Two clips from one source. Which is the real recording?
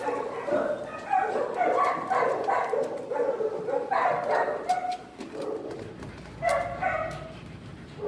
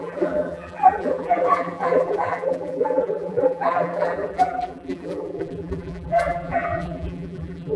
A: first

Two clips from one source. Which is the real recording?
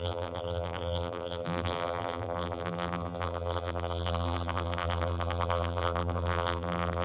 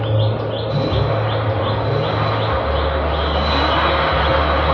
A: second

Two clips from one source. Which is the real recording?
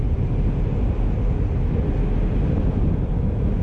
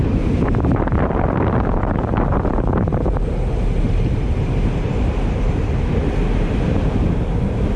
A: first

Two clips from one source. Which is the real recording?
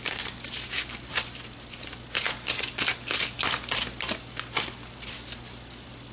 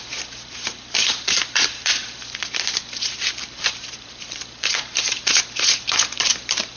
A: first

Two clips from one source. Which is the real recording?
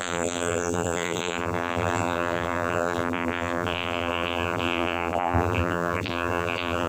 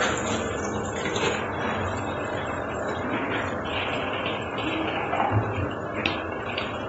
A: second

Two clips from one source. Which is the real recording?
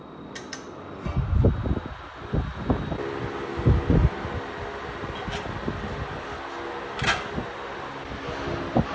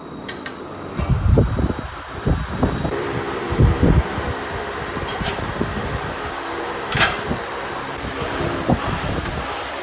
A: first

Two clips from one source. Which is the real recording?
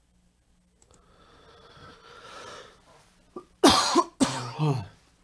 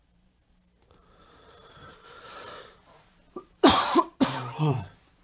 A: first